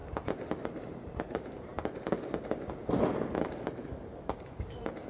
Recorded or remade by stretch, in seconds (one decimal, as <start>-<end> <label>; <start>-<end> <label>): 0.0-0.6 recorded; 0.6-1.7 remade; 1.7-3.1 recorded; 3.1-5.1 remade